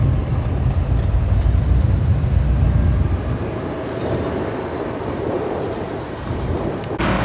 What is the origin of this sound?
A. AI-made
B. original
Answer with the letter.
B